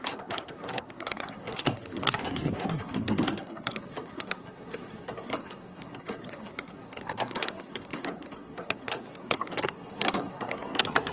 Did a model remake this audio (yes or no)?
yes